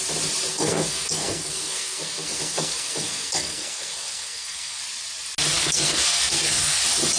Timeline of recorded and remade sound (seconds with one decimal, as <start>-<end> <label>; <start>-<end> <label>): 0.0-0.5 recorded; 0.5-4.8 remade; 4.8-5.6 recorded; 5.6-6.8 remade; 6.8-7.2 recorded